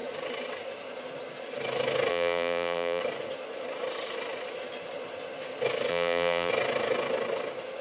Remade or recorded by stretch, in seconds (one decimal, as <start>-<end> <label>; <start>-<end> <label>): 0.0-2.1 recorded; 2.1-3.0 remade; 3.0-5.9 recorded; 5.9-6.5 remade; 6.5-7.8 recorded